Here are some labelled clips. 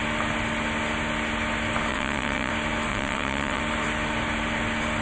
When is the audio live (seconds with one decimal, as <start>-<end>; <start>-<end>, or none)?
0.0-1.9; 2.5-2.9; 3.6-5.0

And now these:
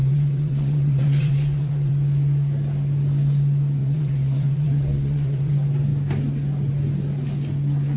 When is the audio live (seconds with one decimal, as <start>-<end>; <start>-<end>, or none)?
1.9-3.8; 5.5-8.0

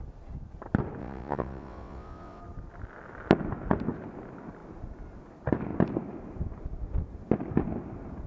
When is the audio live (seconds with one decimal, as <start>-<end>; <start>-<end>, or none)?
0.0-1.0; 2.4-8.3

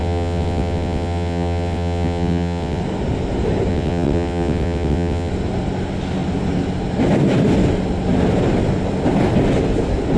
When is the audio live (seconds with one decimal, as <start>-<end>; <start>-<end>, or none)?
2.8-3.7; 5.3-10.2